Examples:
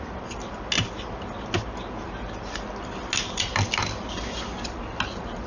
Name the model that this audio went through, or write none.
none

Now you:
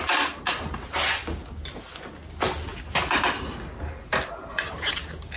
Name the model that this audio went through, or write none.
none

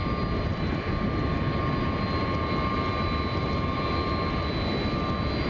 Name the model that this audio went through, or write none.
none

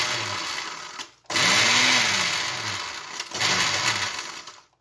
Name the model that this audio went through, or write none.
none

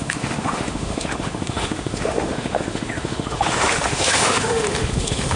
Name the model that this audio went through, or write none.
autoencoder, DAC-VAE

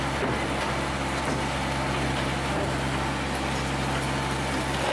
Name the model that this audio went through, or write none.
none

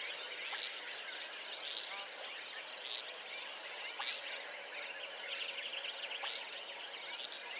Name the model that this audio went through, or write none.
none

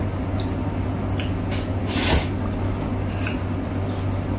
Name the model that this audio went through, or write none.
none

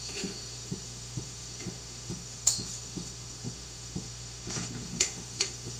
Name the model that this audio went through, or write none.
autoencoder, DAC-VAE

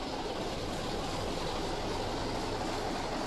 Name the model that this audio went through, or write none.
none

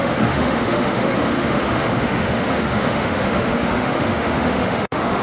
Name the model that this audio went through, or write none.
autoencoder, DAC-VAE